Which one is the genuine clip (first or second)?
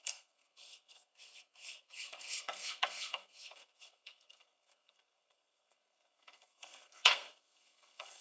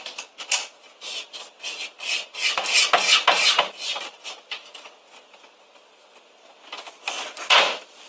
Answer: second